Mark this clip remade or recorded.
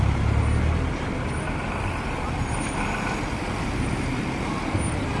remade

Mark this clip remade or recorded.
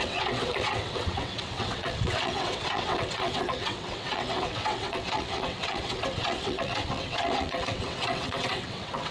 remade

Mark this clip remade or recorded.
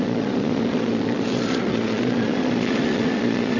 remade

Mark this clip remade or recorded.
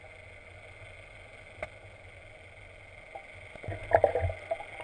recorded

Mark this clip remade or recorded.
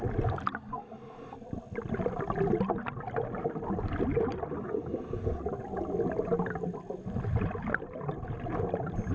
recorded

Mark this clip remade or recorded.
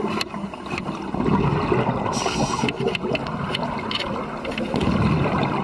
recorded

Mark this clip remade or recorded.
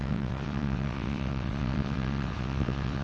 remade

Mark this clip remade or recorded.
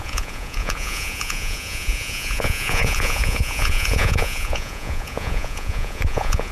remade